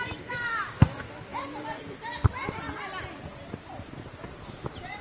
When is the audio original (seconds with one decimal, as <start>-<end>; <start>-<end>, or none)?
0.0-5.0